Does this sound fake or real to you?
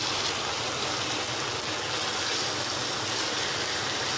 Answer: real